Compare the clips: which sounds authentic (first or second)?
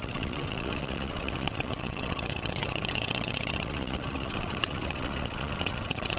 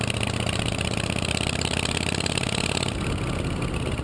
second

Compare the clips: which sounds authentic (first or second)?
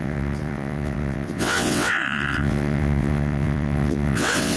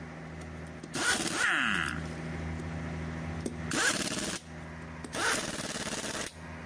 second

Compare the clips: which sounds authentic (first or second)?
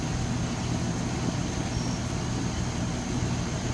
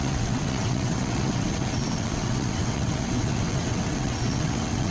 first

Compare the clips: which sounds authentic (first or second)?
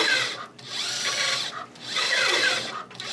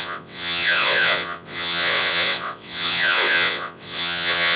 first